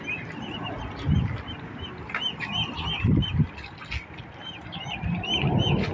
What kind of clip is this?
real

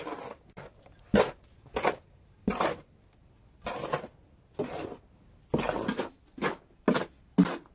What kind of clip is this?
real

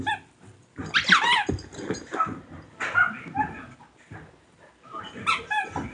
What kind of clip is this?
real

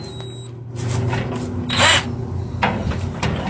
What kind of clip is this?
real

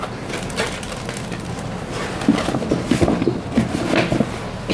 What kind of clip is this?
real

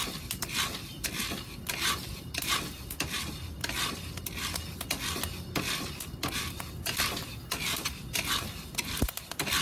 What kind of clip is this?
real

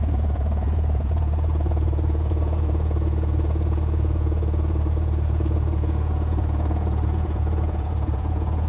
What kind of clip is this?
fake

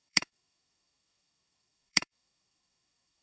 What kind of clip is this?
fake